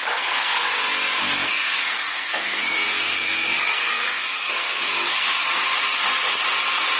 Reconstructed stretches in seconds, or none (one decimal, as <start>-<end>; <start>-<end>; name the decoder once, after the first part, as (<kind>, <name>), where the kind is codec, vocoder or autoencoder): 0.0-5.7 (codec, SNAC)